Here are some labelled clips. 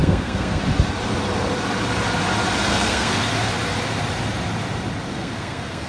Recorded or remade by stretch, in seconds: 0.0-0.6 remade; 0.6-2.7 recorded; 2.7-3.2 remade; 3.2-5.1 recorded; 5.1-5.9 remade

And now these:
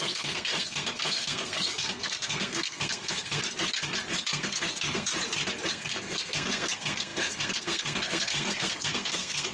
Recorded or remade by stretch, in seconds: 0.0-3.4 remade; 3.4-4.1 recorded; 4.1-5.1 remade; 5.1-5.7 recorded; 5.7-9.5 remade